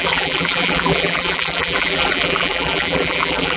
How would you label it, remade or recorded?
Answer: remade